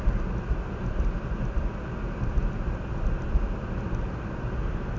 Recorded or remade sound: recorded